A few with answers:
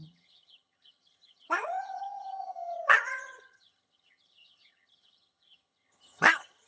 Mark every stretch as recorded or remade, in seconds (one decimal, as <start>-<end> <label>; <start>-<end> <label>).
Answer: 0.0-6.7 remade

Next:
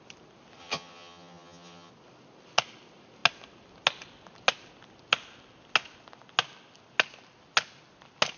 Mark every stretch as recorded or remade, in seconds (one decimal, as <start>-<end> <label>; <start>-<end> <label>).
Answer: 0.0-0.6 recorded; 0.6-1.9 remade; 1.9-8.4 recorded

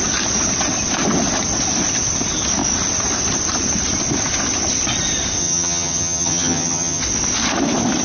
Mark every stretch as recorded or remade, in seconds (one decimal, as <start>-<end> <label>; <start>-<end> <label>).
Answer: 0.0-5.4 recorded; 5.4-7.0 remade; 7.0-8.0 recorded

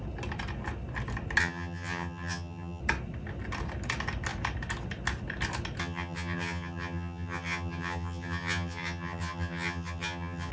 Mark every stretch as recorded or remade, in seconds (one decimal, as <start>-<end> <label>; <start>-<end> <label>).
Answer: 0.0-1.4 recorded; 1.4-2.8 remade; 2.8-5.8 recorded; 5.8-10.5 remade